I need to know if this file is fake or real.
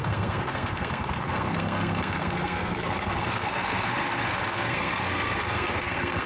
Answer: fake